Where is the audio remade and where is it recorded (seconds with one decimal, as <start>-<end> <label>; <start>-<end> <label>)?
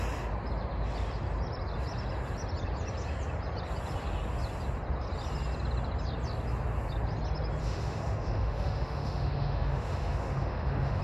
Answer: 0.0-7.6 recorded; 7.6-11.0 remade